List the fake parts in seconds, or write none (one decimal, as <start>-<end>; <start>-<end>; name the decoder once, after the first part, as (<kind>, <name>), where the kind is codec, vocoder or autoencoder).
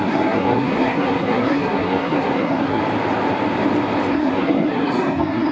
0.0-2.8 (codec, SNAC); 4.1-5.5